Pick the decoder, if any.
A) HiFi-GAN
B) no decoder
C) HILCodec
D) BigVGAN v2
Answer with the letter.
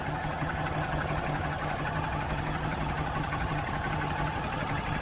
A